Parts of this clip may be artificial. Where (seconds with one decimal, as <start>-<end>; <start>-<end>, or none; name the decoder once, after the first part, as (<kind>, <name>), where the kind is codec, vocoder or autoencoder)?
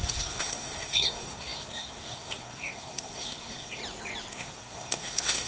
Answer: 0.0-3.8 (codec, SNAC); 4.3-5.5